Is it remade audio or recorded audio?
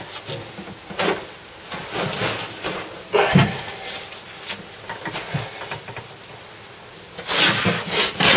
recorded